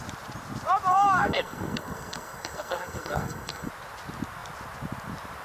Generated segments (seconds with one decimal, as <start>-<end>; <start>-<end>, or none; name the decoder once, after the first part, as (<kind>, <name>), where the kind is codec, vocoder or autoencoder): 0.9-3.7 (codec, SNAC)